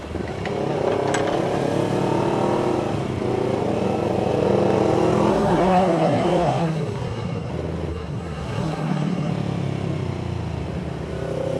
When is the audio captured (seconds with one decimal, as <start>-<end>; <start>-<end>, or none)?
0.0-5.3; 7.5-7.9; 9.3-11.6